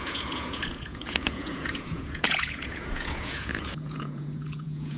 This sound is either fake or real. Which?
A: fake